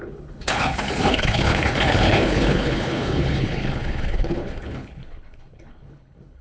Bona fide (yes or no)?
no